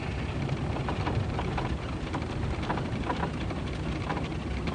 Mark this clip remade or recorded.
recorded